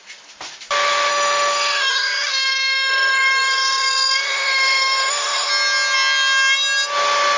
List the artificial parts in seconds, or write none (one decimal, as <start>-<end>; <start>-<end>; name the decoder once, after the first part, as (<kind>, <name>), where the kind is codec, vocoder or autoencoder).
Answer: 1.1-5.5 (autoencoder, DAC-VAE)